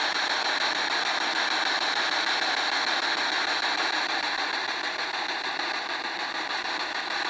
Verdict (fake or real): real